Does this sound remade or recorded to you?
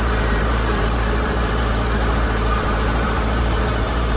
remade